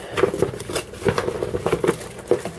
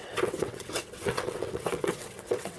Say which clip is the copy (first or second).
second